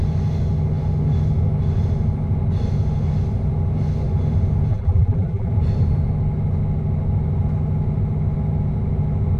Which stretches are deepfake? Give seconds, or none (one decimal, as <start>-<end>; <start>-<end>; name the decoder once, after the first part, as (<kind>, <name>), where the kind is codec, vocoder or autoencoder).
4.7-5.5 (vocoder, BigVGAN v2)